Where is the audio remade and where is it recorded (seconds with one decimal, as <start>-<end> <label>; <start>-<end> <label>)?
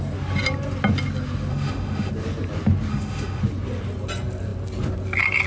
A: 0.0-1.5 recorded; 1.5-2.1 remade; 2.1-2.9 recorded; 2.9-3.4 remade; 3.4-5.5 recorded